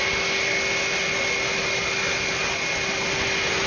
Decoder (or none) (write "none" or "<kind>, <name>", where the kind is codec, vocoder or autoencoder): none